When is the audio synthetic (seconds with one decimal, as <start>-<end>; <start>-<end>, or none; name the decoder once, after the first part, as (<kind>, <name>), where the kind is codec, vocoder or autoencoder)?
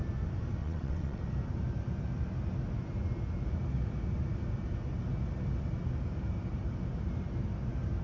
0.6-1.2 (vocoder, WaveNeXt)